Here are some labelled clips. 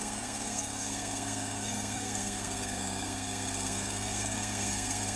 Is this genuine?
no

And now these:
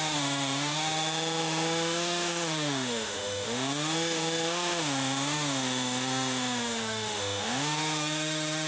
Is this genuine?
no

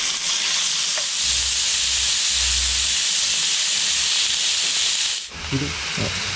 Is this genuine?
yes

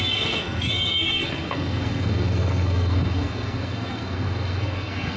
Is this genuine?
no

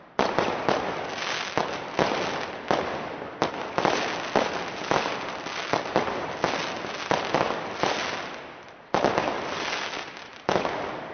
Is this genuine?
yes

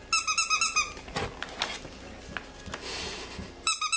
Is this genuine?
yes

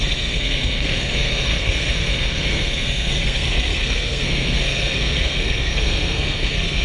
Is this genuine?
no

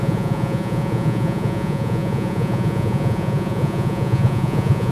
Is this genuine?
no